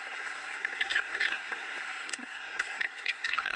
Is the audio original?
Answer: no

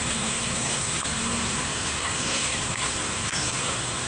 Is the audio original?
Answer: no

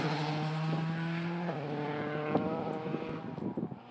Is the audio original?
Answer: yes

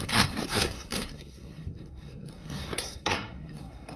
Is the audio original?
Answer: no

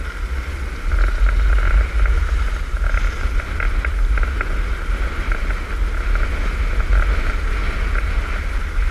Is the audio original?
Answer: yes